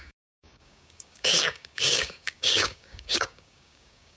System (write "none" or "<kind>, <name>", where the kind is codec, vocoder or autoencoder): codec, DAC